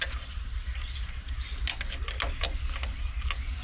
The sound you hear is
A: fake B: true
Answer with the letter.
B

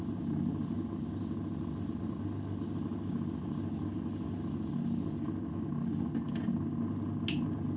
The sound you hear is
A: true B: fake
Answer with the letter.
A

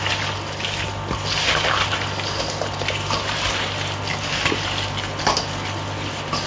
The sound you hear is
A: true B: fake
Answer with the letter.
A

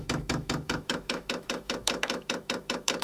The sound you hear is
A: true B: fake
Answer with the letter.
B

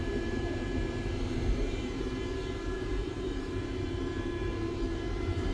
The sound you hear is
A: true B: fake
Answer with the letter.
B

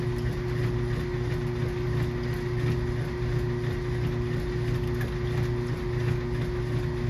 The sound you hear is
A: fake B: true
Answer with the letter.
B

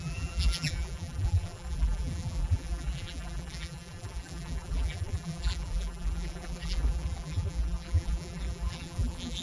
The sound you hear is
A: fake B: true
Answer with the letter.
A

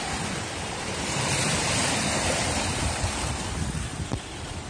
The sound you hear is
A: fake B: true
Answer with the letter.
A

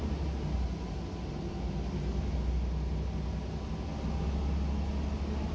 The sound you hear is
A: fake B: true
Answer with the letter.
B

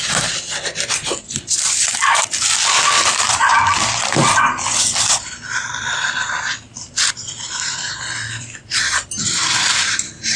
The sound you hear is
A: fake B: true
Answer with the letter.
A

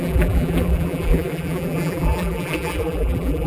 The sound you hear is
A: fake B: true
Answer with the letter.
A